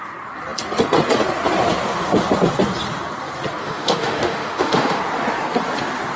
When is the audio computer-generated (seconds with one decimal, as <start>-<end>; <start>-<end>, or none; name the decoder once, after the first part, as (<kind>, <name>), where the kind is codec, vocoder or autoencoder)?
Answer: 3.6-5.0 (autoencoder, DAC-VAE)